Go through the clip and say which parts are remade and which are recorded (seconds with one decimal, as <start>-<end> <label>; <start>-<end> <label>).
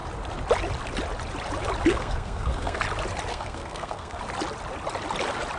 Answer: 0.0-1.9 recorded; 1.9-2.8 remade; 2.8-3.3 recorded; 3.3-4.2 remade; 4.2-5.6 recorded